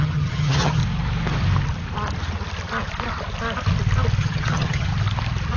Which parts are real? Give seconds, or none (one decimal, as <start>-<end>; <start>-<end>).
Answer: 0.8-4.2; 4.9-5.6